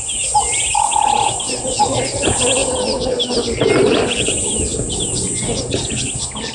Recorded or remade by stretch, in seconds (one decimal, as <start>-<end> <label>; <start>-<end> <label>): 0.0-6.5 recorded